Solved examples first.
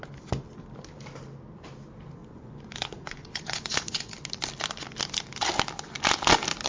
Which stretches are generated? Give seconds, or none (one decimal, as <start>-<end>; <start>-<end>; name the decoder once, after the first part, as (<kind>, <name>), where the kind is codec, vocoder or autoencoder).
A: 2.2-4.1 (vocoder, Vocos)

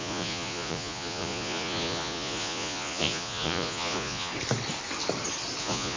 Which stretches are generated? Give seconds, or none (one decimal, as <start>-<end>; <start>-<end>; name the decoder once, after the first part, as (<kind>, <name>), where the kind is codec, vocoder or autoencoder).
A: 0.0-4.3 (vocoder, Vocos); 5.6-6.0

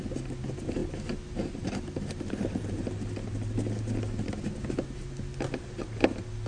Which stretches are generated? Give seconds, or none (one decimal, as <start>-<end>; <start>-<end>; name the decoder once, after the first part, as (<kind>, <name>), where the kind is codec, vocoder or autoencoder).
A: none

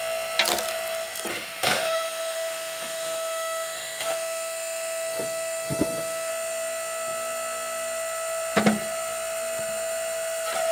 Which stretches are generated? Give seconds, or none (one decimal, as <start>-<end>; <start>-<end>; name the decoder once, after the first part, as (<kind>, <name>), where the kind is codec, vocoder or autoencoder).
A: 1.3-6.3 (autoencoder, DAC-VAE)

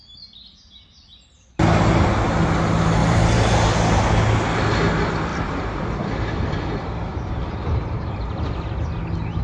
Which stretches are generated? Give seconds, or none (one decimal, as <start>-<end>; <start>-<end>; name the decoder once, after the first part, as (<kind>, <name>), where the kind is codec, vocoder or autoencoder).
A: 3.0-4.1 (vocoder, BigVGAN v2); 5.3-6.0; 7.1-8.3

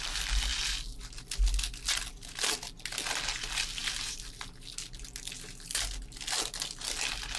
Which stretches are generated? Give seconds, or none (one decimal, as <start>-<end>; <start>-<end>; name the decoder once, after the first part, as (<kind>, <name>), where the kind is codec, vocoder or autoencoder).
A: none

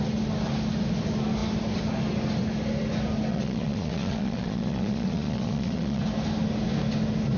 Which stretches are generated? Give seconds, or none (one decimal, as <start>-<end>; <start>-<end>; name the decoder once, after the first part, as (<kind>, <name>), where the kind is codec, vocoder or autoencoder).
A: 3.3-6.0 (vocoder, Vocos)